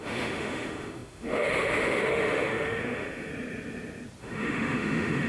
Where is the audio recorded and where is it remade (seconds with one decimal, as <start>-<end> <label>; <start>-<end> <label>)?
0.0-3.3 remade; 3.3-4.2 recorded; 4.2-5.3 remade